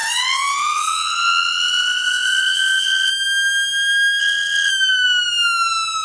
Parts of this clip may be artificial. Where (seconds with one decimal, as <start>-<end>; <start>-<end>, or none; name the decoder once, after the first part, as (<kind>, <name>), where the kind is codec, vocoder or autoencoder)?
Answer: 0.0-3.1 (vocoder, WaveNeXt); 4.2-4.7